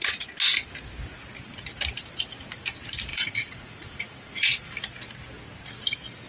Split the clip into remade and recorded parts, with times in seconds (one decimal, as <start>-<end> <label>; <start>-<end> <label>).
0.0-3.1 recorded; 3.1-4.8 remade; 4.8-6.3 recorded